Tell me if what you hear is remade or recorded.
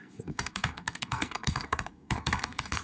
remade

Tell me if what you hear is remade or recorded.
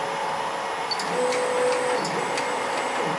recorded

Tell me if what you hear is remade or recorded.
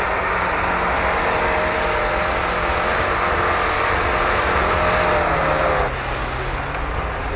recorded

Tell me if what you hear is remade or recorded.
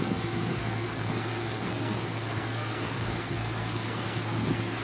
remade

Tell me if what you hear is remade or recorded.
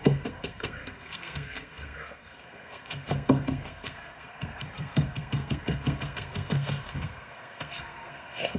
remade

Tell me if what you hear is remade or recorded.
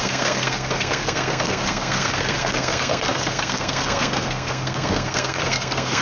remade